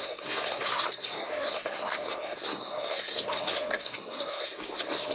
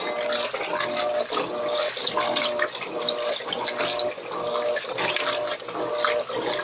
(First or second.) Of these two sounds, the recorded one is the second